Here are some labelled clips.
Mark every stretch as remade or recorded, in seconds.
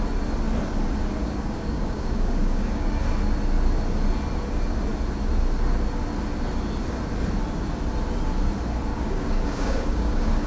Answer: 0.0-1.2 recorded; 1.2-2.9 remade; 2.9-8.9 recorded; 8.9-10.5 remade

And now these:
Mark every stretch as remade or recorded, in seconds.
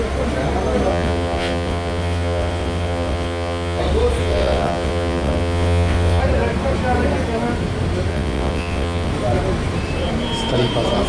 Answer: 0.0-0.9 recorded; 0.9-3.8 remade; 3.8-4.2 recorded; 4.2-6.2 remade; 6.2-8.1 recorded; 8.1-9.1 remade; 9.1-11.1 recorded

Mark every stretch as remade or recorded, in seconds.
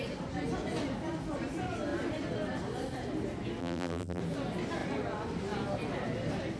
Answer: 0.0-3.6 recorded; 3.6-4.2 remade; 4.2-6.6 recorded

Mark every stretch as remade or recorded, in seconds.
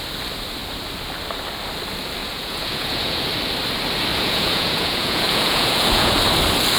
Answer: 0.0-2.2 recorded; 2.2-3.2 remade; 3.2-4.1 recorded; 4.1-6.2 remade; 6.2-6.8 recorded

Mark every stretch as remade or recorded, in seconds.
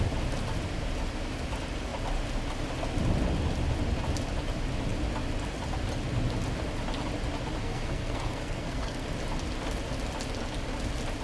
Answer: 0.0-7.6 recorded; 7.6-9.1 remade; 9.1-11.2 recorded